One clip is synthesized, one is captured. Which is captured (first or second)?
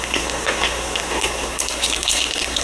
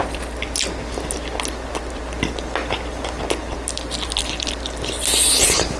second